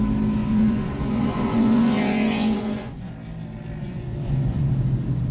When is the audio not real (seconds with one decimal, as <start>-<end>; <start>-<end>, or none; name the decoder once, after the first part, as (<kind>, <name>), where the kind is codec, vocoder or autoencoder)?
0.4-3.1 (vocoder, Vocos); 3.8-4.7